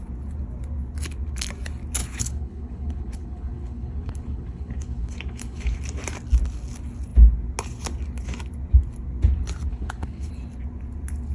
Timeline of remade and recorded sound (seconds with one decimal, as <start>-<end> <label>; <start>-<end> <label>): 0.0-2.0 recorded; 2.0-5.8 remade; 5.8-9.7 recorded; 9.7-10.3 remade; 10.3-11.3 recorded